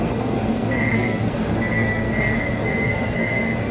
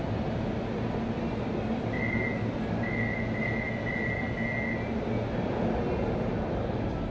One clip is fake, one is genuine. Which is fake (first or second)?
first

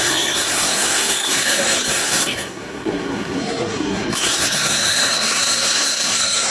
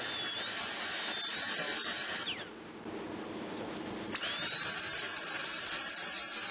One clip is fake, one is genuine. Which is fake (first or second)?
first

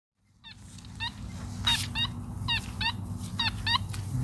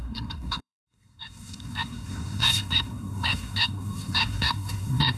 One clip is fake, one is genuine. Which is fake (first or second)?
second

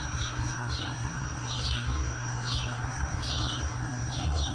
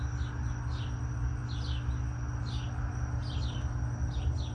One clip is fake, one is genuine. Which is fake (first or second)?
first